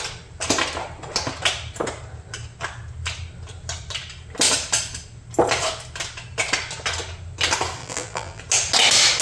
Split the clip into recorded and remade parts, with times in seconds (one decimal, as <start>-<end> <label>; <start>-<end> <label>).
0.0-7.8 recorded; 7.8-8.4 remade; 8.4-9.2 recorded